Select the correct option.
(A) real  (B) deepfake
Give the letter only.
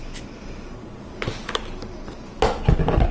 A